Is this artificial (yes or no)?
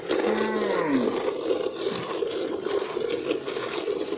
no